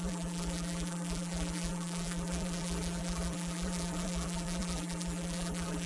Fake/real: fake